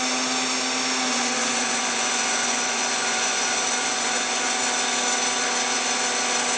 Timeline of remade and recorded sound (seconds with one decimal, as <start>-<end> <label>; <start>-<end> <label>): 0.0-1.1 recorded; 1.1-4.6 remade; 4.6-6.6 recorded